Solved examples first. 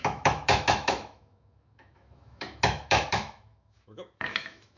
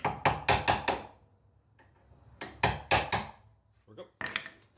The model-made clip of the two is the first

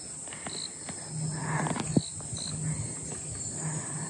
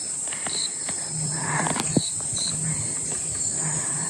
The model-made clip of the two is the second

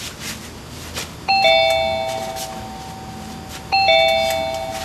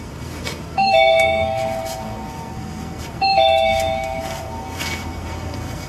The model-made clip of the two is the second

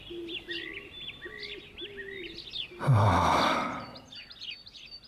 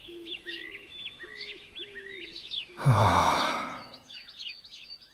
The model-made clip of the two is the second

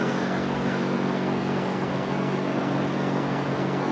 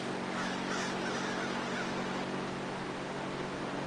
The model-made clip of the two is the first